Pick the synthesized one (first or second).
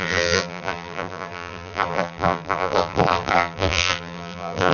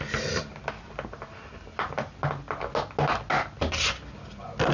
first